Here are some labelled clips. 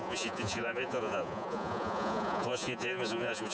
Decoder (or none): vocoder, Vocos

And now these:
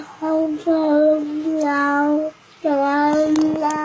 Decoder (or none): none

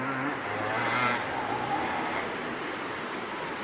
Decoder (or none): none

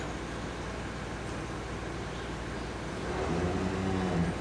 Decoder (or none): none